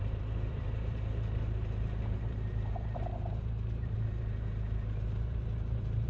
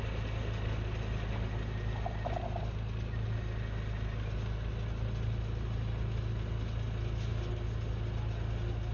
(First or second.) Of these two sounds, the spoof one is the first